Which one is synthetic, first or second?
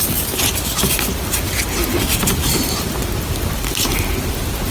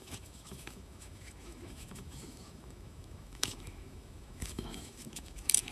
second